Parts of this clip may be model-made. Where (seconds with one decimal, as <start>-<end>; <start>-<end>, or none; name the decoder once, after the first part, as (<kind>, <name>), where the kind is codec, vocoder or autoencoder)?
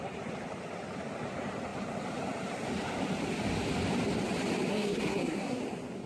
4.7-5.6 (codec, SNAC)